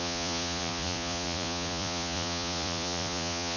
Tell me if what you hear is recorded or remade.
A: remade